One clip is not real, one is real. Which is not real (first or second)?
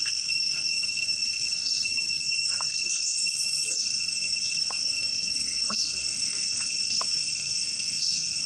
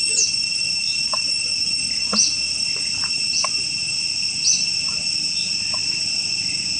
first